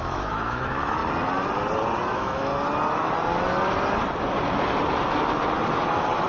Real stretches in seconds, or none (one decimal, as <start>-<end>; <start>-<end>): 1.0-2.1; 2.5-6.3